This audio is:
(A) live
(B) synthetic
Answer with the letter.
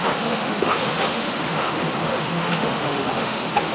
B